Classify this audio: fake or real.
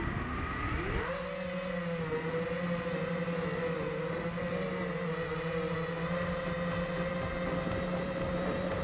real